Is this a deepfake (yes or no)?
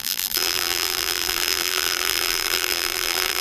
yes